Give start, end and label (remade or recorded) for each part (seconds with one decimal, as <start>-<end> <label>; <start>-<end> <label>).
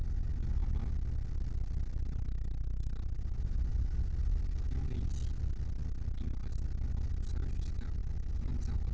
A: 0.0-8.9 recorded